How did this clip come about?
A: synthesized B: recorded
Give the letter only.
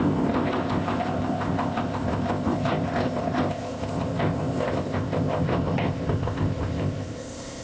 A